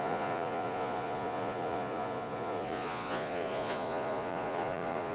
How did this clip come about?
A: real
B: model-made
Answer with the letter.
B